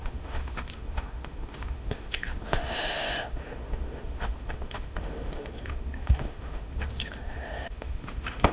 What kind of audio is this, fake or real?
fake